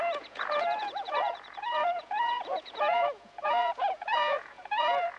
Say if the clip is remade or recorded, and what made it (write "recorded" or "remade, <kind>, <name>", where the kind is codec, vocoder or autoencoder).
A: remade, vocoder, Vocos